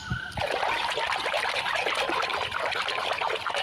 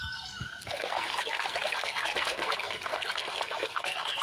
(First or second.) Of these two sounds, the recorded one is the first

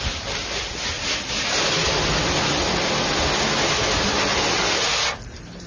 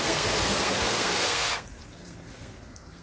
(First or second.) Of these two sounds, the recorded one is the first